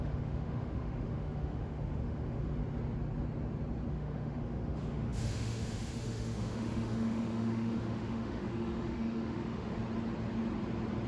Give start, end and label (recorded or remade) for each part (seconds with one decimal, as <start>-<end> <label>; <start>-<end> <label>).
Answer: 0.0-2.6 remade; 2.6-3.9 recorded; 3.9-9.8 remade; 9.8-11.1 recorded